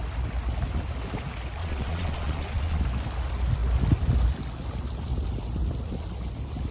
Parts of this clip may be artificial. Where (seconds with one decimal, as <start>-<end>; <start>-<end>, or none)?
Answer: 1.6-2.8